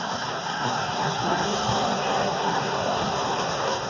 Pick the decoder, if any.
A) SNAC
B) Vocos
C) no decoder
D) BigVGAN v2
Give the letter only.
A